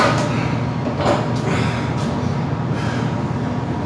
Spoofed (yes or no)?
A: no